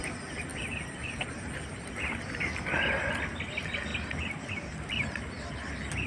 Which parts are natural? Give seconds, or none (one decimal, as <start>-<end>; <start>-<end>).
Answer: 0.0-6.1